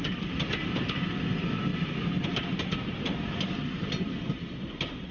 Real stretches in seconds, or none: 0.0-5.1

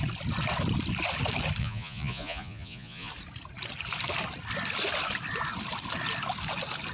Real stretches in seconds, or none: 0.0-1.6; 3.1-6.9

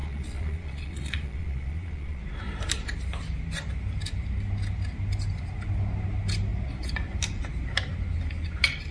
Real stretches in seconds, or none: 2.2-8.9

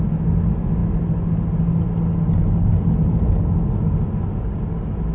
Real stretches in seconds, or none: 0.0-5.1